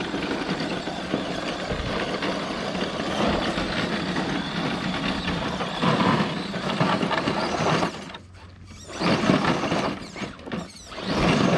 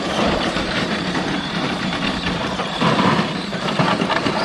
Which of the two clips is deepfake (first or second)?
second